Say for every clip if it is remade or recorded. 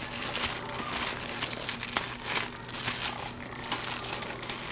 recorded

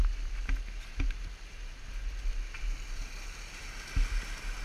recorded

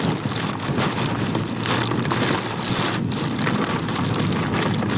recorded